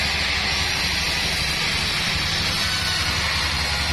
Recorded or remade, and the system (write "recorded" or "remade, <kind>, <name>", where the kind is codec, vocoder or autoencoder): recorded